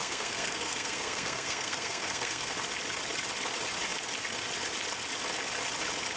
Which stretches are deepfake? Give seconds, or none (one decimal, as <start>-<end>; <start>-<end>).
0.0-2.5